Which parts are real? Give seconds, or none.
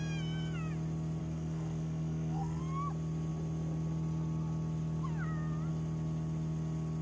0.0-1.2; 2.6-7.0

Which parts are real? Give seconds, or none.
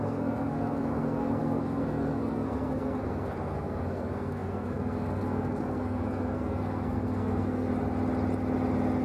7.7-9.0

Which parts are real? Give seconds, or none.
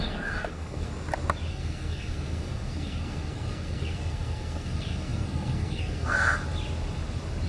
0.9-1.5; 6.4-7.5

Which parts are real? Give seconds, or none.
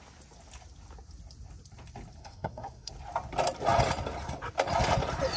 0.0-2.2; 2.9-5.4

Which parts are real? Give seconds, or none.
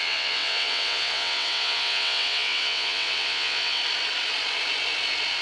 3.8-5.4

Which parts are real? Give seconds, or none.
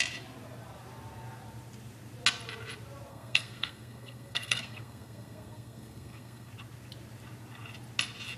0.0-3.1; 6.5-8.4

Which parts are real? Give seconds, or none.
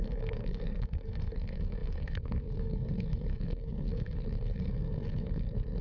none